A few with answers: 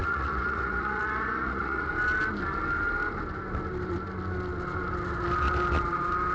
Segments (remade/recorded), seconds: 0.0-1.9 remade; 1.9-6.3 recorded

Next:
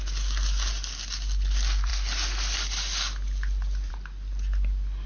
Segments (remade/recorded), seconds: 0.0-5.1 recorded

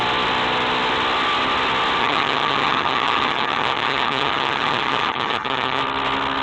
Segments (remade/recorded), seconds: 0.0-2.0 recorded; 2.0-5.8 remade; 5.8-6.4 recorded

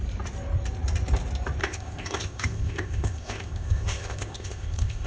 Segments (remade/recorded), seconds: 0.0-1.6 recorded; 1.6-5.1 remade

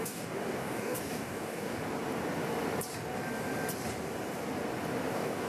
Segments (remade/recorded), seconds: 0.0-1.8 remade; 1.8-5.1 recorded; 5.1-5.5 remade